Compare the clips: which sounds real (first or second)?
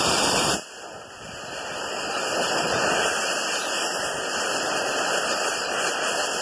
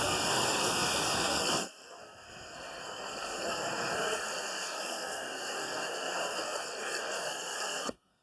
first